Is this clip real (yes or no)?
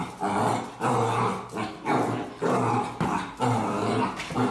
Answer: yes